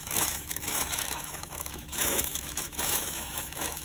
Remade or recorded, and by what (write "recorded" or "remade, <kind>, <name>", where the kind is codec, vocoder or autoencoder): remade, autoencoder, DAC-VAE